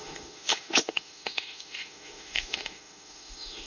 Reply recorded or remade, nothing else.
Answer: remade